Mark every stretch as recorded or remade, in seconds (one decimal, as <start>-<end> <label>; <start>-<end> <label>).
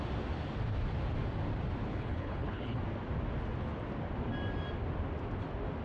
0.0-1.9 recorded; 1.9-2.8 remade; 2.8-5.8 recorded